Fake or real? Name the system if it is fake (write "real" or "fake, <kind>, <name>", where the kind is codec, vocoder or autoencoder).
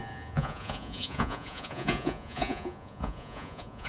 fake, vocoder, Vocos